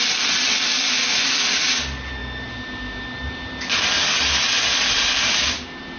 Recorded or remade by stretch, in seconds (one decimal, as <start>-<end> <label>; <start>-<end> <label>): 0.0-6.0 recorded